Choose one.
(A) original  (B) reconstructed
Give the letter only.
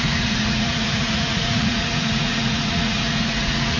B